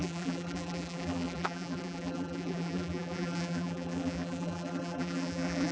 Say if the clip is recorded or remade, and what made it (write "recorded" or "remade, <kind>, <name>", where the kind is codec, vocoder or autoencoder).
remade, vocoder, BigVGAN v2